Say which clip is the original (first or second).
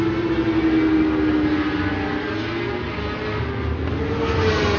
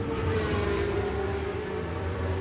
first